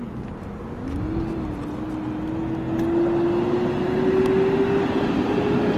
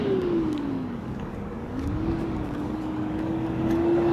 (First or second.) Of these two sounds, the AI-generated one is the second